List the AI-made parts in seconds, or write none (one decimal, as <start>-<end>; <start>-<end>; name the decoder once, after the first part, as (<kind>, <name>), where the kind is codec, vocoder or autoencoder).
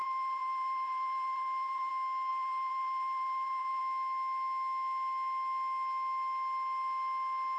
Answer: 0.0-1.9 (vocoder, BigVGAN v2); 2.3-3.8